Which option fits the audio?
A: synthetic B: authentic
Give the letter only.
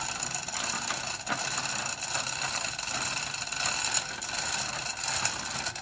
B